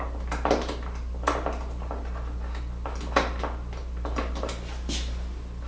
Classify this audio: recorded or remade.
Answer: recorded